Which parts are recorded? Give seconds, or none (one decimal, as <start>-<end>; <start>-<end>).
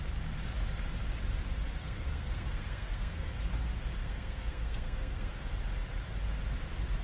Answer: 0.0-1.8; 3.3-4.0; 5.3-7.0